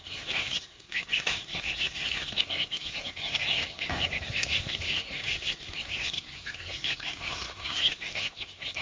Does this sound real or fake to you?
fake